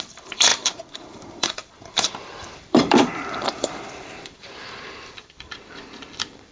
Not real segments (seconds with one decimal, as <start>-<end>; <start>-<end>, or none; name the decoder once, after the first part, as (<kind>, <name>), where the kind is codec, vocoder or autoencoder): 0.0-6.5 (vocoder, BigVGAN v2)